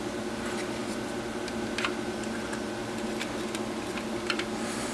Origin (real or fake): real